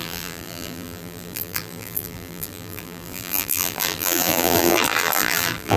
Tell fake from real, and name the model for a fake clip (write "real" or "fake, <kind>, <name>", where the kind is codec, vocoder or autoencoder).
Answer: fake, vocoder, BigVGAN v2